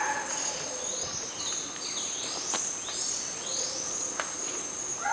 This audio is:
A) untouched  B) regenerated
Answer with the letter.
A